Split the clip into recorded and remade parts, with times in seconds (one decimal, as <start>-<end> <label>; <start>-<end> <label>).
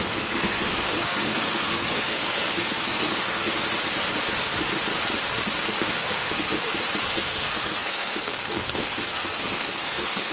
0.0-3.5 remade; 3.5-5.6 recorded; 5.6-6.5 remade; 6.5-7.1 recorded; 7.1-10.3 remade